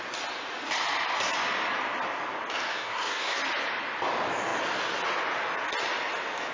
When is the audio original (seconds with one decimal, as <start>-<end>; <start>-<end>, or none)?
0.0-2.7; 3.4-6.5